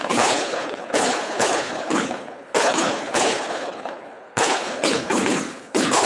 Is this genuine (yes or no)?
no